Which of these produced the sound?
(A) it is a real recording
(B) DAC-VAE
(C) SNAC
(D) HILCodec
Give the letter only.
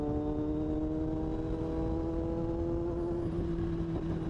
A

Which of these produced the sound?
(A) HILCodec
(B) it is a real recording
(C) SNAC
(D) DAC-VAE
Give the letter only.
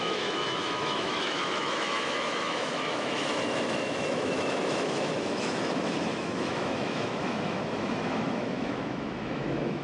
D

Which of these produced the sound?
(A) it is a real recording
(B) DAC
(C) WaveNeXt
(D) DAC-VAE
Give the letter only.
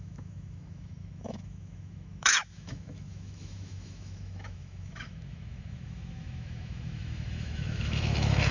D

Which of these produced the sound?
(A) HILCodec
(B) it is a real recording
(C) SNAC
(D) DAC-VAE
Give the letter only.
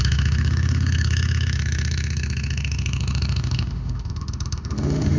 D